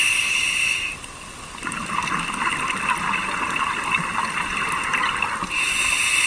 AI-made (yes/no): no